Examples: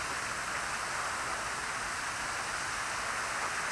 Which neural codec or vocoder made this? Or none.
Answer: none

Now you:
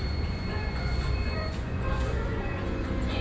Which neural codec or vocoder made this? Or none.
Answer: vocoder, Vocos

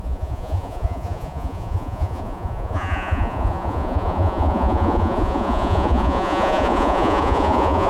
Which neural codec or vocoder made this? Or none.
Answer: vocoder, Vocos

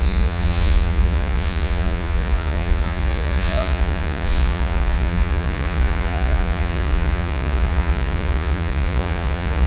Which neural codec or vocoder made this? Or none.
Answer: vocoder, Vocos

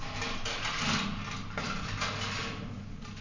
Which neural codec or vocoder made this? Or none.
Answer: none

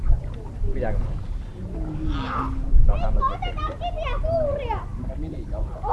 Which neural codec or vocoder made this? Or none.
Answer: none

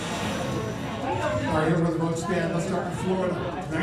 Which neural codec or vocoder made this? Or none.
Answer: none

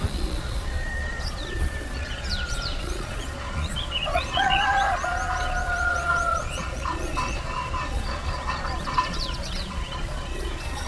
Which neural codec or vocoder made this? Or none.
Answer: vocoder, Vocos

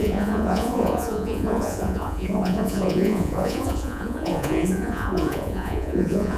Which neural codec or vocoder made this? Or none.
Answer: vocoder, Vocos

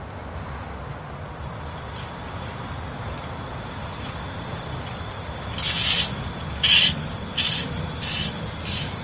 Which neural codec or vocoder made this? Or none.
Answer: none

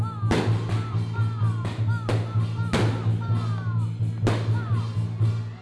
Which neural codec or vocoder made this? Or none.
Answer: none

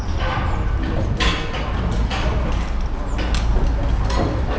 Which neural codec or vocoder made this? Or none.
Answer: none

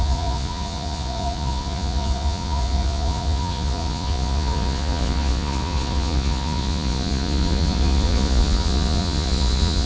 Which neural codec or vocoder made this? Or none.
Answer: vocoder, Vocos